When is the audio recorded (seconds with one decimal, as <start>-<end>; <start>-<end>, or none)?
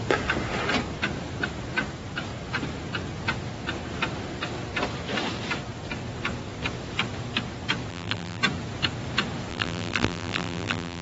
0.0-7.9; 8.4-9.5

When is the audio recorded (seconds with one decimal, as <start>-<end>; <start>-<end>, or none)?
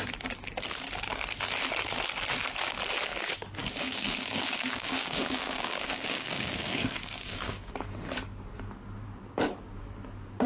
0.0-3.6; 7.7-10.5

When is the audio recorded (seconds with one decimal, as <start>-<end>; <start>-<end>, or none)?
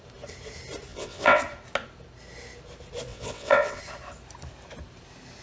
0.0-0.9; 1.4-3.1; 3.8-5.4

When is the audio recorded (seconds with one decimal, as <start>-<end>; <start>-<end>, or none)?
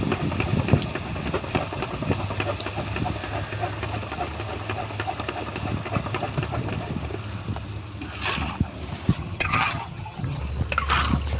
0.0-9.1; 10.4-11.4